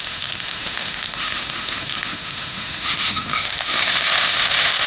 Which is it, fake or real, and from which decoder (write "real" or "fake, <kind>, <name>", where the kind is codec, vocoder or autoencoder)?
fake, autoencoder, DAC-VAE